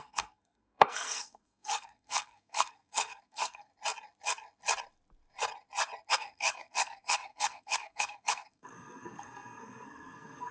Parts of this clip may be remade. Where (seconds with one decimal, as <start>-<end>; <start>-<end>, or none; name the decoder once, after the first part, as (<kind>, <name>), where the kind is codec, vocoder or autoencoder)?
0.0-3.7 (codec, SNAC); 6.1-10.5